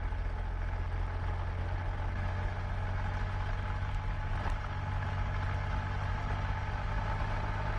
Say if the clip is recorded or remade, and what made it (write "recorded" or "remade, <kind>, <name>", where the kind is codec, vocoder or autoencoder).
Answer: recorded